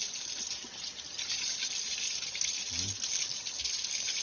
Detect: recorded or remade recorded